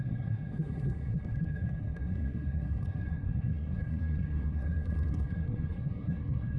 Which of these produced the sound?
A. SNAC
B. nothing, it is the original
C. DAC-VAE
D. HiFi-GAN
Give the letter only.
A